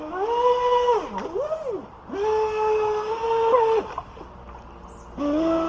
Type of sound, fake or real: real